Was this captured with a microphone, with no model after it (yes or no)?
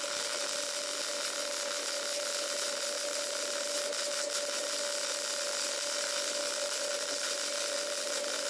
yes